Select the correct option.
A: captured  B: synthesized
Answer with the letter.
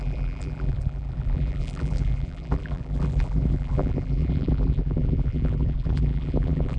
B